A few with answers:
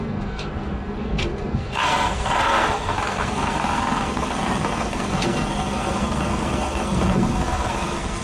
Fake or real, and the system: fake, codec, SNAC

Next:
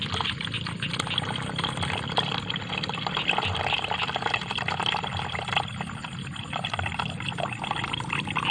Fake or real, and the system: real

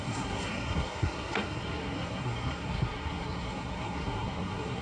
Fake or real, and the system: fake, codec, SNAC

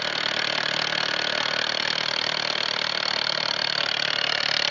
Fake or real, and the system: real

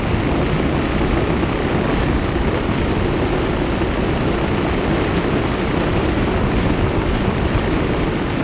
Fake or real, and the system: real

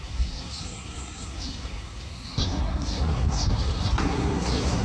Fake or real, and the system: fake, codec, SNAC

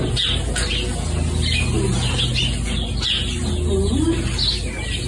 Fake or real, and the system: real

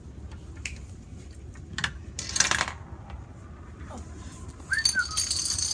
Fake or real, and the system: real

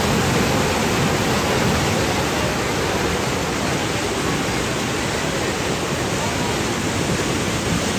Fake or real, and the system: real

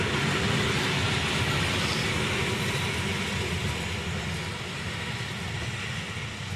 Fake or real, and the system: real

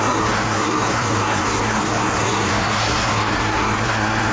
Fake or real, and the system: fake, codec, SNAC